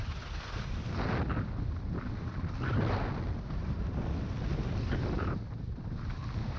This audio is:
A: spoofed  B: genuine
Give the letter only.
B